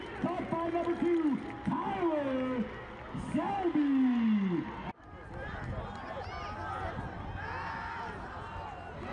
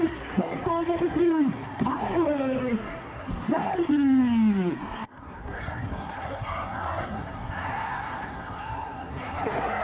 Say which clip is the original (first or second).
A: first